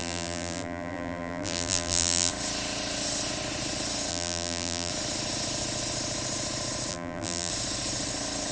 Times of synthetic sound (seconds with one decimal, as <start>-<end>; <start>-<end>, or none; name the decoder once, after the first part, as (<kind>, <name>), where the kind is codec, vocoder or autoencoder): 0.0-2.3 (vocoder, BigVGAN v2); 4.1-4.9; 6.9-7.5

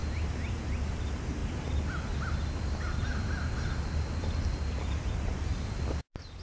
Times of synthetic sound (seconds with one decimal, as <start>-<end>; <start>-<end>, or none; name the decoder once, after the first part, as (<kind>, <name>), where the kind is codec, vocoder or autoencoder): none

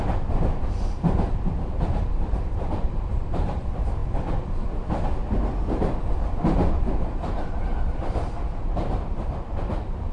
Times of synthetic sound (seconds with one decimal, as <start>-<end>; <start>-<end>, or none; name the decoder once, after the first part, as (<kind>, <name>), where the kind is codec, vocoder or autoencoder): 0.0-4.0 (vocoder, BigVGAN v2); 8.7-10.1

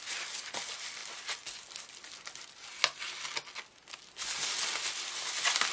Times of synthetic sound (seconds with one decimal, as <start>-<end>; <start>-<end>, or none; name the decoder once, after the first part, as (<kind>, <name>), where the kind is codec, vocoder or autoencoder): none